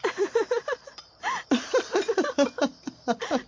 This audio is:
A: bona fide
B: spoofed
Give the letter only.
B